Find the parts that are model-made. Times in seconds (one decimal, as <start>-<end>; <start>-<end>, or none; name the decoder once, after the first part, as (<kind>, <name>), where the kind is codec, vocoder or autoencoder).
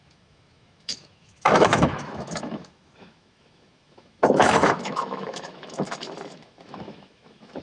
0.0-7.6 (autoencoder, DAC-VAE)